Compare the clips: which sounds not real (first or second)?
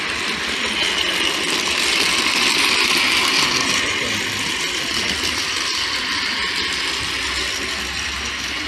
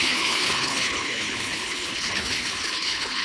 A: second